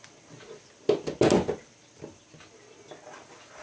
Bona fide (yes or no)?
yes